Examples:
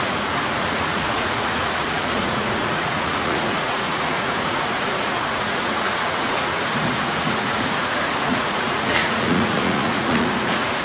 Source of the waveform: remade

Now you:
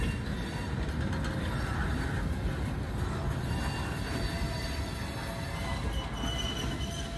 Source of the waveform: recorded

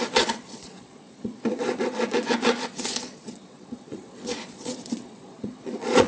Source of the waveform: remade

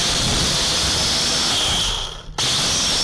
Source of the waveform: recorded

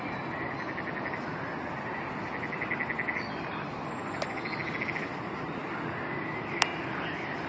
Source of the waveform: recorded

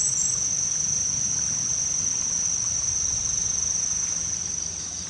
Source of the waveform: recorded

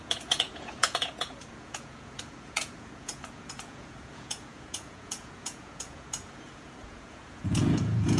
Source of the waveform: remade